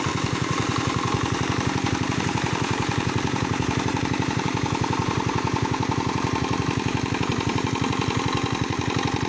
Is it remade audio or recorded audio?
remade